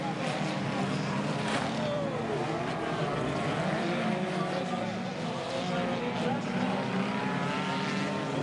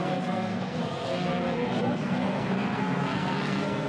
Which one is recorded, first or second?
first